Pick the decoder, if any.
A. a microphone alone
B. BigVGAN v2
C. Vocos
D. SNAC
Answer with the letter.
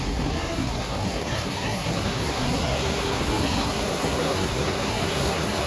D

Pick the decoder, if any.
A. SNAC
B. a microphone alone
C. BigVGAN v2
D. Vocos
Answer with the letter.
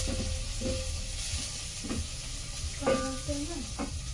B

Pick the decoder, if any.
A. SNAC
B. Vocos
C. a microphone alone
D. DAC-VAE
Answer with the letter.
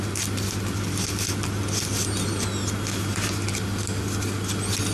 C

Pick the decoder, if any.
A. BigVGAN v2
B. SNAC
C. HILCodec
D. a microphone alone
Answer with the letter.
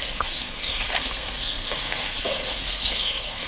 B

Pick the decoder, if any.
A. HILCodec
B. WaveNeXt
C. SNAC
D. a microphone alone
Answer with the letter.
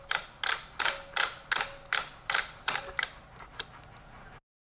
D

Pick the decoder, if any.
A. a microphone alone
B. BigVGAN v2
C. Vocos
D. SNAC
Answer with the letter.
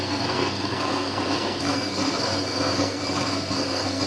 D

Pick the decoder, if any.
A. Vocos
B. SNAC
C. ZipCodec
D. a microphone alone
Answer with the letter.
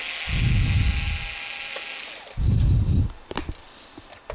D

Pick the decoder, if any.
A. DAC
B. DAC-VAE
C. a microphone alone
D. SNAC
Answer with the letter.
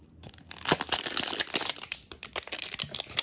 C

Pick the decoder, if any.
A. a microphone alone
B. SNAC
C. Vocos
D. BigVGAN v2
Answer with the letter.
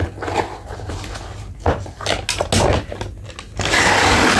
A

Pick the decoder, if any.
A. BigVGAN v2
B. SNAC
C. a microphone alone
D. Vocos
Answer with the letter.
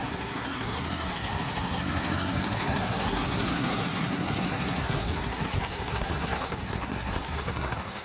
B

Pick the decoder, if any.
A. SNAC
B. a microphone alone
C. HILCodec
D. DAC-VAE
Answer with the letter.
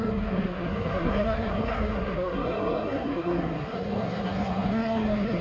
A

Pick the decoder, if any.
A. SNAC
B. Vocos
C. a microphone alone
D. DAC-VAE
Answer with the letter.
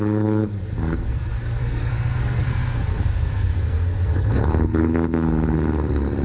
A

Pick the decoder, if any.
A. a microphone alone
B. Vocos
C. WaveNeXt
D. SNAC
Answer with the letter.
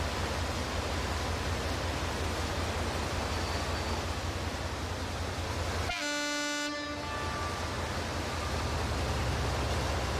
A